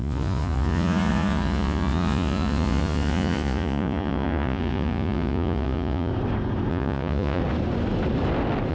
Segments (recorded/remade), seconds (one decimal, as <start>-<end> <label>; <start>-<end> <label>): 0.0-6.1 remade; 6.1-6.7 recorded; 6.7-7.4 remade; 7.4-8.7 recorded